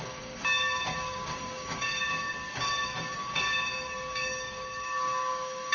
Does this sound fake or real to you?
fake